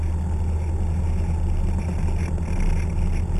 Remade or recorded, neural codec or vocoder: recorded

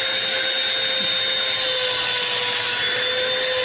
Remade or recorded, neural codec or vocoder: recorded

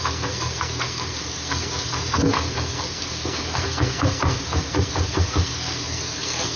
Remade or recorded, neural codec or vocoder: remade, codec, SNAC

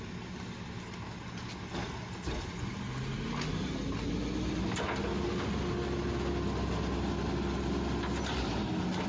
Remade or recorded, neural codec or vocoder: recorded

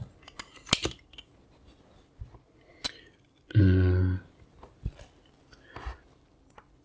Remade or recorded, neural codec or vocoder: recorded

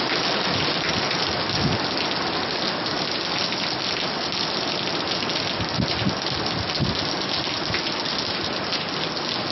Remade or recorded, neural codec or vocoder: recorded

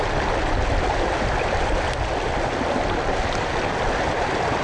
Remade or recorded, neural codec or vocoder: recorded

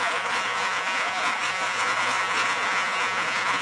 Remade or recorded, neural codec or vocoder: remade, vocoder, Vocos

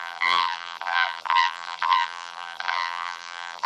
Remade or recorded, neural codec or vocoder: remade, vocoder, BigVGAN v2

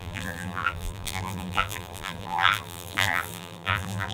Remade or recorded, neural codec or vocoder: remade, vocoder, BigVGAN v2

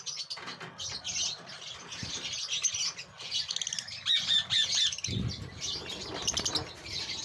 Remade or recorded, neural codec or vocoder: recorded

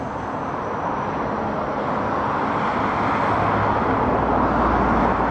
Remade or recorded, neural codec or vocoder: recorded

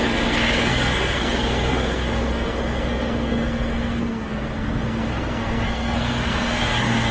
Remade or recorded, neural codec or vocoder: remade, codec, SNAC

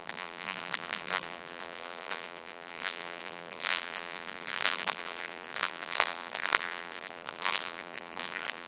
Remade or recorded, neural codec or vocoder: remade, vocoder, BigVGAN v2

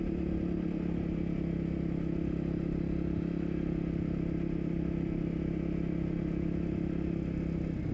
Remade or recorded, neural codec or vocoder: recorded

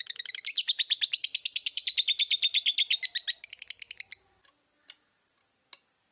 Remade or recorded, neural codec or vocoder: recorded